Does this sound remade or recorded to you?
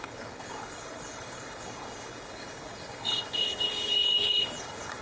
remade